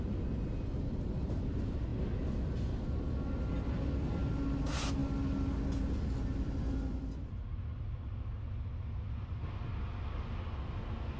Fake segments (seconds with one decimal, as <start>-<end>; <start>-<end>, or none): none